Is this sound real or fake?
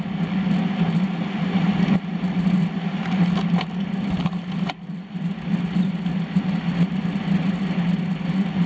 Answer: real